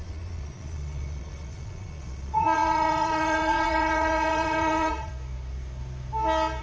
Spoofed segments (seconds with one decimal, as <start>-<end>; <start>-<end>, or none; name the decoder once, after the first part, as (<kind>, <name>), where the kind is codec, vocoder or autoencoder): 0.0-5.1 (vocoder, Vocos)